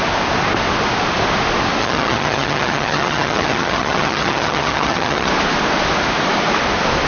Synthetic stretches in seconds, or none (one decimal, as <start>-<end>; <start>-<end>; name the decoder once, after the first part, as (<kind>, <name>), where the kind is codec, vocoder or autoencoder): 1.8-5.3 (vocoder, HiFi-GAN)